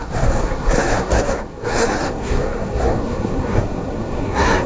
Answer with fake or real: fake